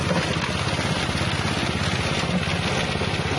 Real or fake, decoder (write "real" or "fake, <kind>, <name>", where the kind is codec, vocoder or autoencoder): real